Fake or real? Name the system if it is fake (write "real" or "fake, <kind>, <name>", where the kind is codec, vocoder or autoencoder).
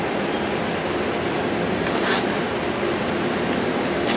real